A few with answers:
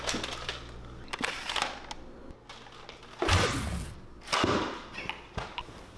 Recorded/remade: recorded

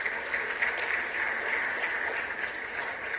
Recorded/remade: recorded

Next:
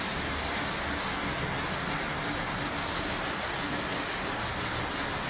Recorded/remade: recorded